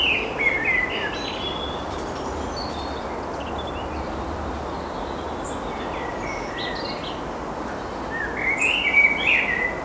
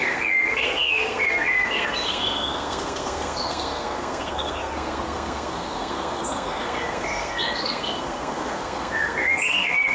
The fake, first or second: second